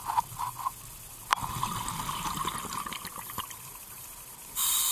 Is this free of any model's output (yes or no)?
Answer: yes